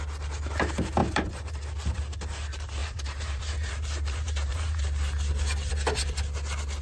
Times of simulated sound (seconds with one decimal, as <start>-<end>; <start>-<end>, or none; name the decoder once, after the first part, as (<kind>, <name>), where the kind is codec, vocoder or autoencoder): 1.0-1.7 (vocoder, BigVGAN v2); 2.8-4.8